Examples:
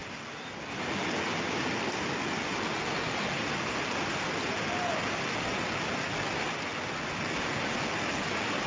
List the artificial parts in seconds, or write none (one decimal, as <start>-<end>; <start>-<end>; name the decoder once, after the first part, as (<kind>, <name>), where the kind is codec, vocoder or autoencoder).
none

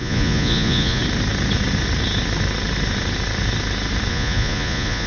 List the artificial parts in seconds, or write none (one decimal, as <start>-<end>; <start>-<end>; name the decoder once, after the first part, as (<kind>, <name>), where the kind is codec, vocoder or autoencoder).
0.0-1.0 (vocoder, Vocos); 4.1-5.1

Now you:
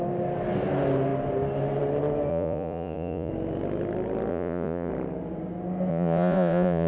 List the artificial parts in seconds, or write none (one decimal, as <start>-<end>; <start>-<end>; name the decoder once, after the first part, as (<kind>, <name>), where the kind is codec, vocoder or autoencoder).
2.3-3.3 (vocoder, Vocos); 4.3-4.9; 5.9-6.9

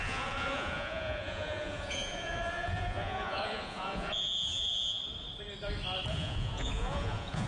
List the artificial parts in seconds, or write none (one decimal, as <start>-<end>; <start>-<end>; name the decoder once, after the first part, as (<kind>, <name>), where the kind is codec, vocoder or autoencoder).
0.0-5.0 (vocoder, Vocos); 6.1-7.5

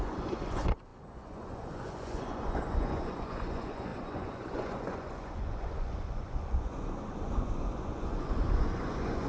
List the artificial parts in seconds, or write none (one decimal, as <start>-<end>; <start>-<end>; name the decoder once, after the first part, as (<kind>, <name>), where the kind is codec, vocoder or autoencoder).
0.0-9.3 (vocoder, Vocos)

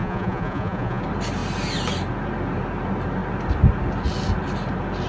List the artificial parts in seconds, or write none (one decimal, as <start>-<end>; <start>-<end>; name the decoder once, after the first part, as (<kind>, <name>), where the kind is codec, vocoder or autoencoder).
0.0-1.0 (vocoder, Vocos)

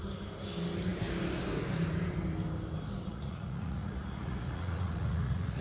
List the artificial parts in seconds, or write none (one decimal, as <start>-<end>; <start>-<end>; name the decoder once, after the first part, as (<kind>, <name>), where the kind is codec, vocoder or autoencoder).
3.1-5.6 (vocoder, Vocos)